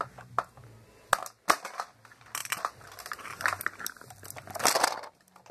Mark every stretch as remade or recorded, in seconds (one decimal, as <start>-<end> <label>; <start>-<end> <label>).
0.0-2.4 recorded; 2.4-3.6 remade; 3.6-5.5 recorded